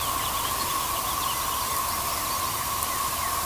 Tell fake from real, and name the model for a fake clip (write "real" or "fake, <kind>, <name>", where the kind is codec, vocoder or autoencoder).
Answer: real